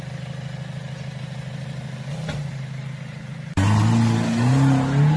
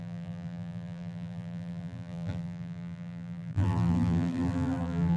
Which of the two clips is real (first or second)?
first